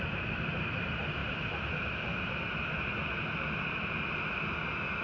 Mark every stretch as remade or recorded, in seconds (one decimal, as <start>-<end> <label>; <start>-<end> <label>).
0.0-1.2 remade; 1.2-3.7 recorded; 3.7-5.0 remade